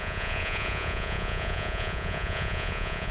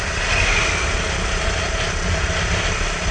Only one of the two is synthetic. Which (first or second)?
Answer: first